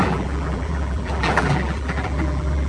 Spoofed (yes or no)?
yes